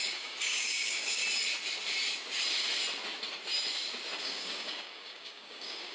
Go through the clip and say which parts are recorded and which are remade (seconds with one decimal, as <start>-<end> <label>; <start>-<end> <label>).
0.0-1.2 remade; 1.2-4.2 recorded; 4.2-5.9 remade